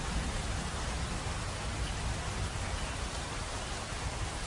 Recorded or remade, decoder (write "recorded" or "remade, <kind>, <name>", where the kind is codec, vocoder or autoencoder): recorded